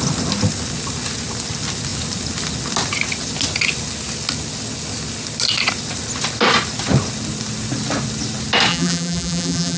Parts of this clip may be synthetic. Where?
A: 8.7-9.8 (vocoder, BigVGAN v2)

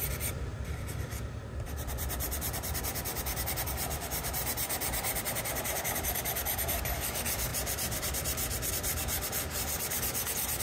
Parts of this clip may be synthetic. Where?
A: 0.0-10.6 (vocoder, BigVGAN v2)

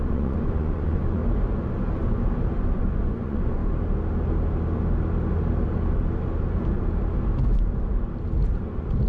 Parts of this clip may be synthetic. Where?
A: 0.0-1.2 (vocoder, Vocos); 2.7-3.6; 8.6-9.1

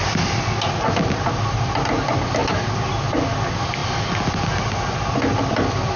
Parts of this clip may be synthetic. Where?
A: none

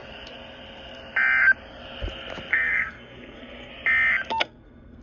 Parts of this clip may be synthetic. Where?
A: 2.5-3.7 (codec, SNAC); 4.4-5.0

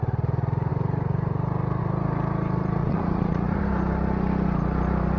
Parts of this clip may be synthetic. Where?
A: 2.8-3.6 (vocoder, Vocos)

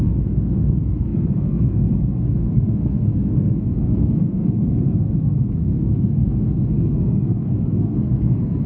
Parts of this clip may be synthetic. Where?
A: 0.0-8.7 (codec, SNAC)